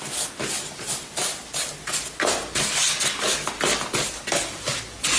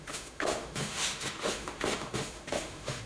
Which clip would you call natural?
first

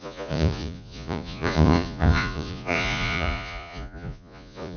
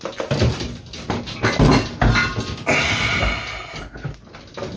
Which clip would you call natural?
second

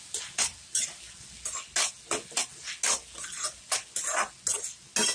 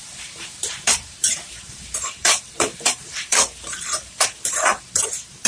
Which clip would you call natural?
first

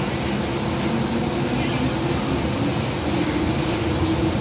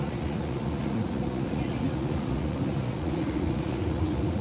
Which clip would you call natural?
first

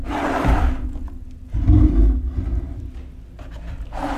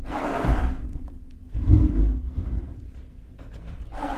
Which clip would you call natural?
first